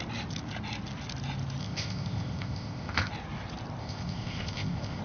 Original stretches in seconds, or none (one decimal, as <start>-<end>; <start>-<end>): 0.0-1.6; 3.1-3.8